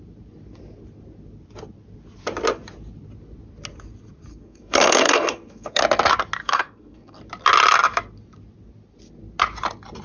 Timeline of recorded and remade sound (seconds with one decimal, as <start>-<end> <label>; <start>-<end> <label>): 0.0-4.3 recorded; 4.3-5.8 remade; 5.8-6.4 recorded; 6.4-7.2 remade; 7.2-10.0 recorded

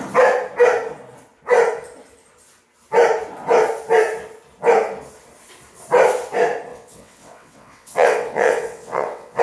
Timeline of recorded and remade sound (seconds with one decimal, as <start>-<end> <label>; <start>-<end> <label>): 0.0-6.7 recorded; 6.7-9.4 remade

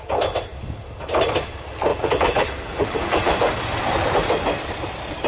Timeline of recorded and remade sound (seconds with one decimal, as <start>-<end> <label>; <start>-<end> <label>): 0.0-1.9 recorded; 1.9-3.5 remade; 3.5-5.3 recorded

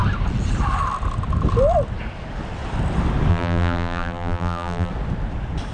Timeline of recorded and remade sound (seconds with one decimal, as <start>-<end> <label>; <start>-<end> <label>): 0.0-3.3 recorded; 3.3-4.9 remade; 4.9-5.7 recorded

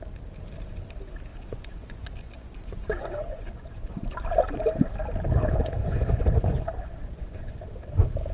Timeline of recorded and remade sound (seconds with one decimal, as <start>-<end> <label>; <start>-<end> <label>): 0.0-1.3 recorded; 1.3-4.1 remade; 4.1-5.8 recorded; 5.8-7.6 remade; 7.6-8.3 recorded

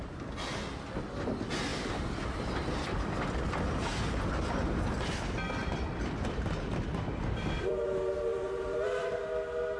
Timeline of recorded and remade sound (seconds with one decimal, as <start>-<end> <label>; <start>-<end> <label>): 0.0-1.7 recorded; 1.7-3.6 remade; 3.6-5.6 recorded; 5.6-7.7 remade; 7.7-8.3 recorded; 8.3-9.2 remade; 9.2-9.8 recorded